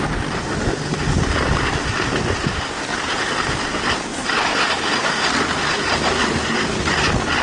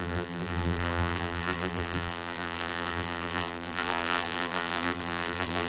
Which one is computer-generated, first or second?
second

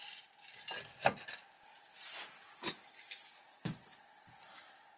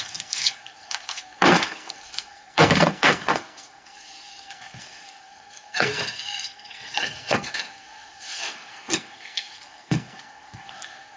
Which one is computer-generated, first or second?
second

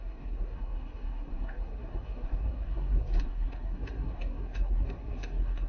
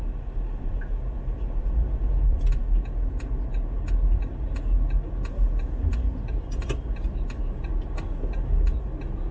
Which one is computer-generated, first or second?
first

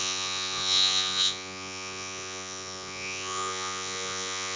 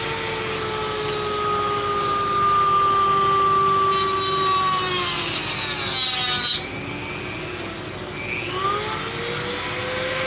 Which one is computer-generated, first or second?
first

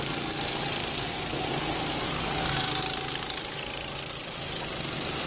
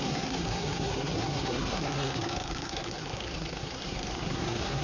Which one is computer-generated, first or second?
second